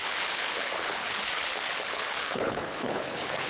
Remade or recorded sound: remade